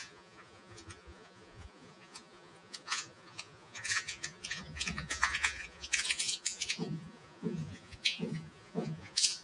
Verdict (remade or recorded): remade